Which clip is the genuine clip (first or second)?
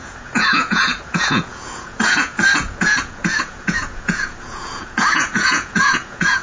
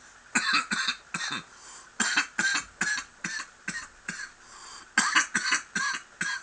second